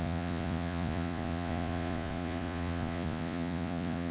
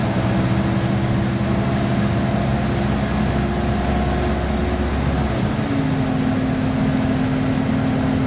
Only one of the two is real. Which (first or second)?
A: second